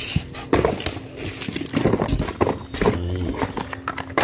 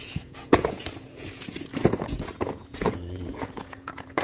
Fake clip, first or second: second